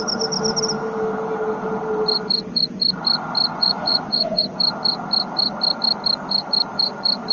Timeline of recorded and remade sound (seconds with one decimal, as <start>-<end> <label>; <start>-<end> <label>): 0.0-3.5 recorded; 3.5-4.4 remade; 4.4-7.3 recorded